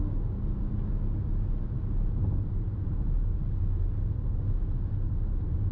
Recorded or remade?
recorded